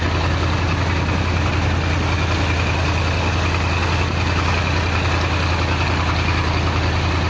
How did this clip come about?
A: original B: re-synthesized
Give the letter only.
A